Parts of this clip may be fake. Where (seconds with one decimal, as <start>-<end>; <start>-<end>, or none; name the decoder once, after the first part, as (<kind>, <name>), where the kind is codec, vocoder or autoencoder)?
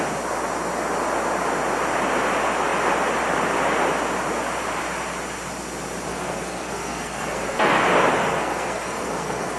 6.1-7.8 (codec, SNAC); 8.2-9.6